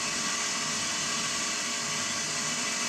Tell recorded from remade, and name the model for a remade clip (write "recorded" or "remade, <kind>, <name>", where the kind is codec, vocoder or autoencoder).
recorded